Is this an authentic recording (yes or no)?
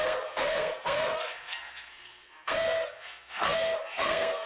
no